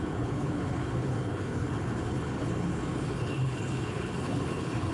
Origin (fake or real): fake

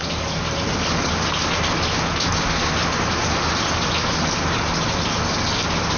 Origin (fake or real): real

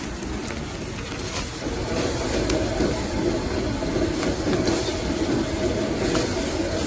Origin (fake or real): real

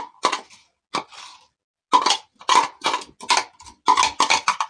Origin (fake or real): real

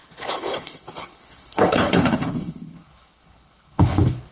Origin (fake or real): fake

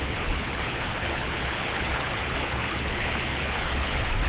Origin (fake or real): fake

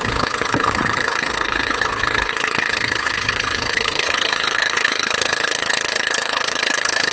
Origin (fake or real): fake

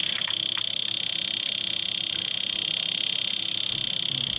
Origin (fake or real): real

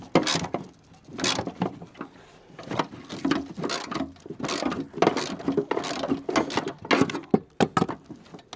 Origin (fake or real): real